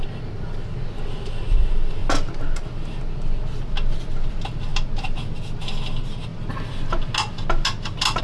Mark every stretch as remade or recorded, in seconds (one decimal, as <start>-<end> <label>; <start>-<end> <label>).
0.0-8.2 recorded